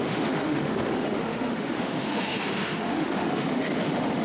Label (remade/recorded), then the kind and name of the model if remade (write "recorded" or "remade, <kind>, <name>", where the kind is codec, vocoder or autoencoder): remade, autoencoder, DAC-VAE